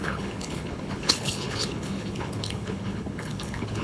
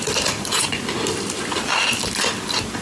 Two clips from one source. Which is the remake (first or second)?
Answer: first